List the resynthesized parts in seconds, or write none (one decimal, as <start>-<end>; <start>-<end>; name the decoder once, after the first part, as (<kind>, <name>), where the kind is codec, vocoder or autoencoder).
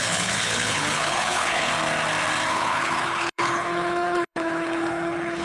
0.0-1.7 (codec, HILCodec); 2.5-5.4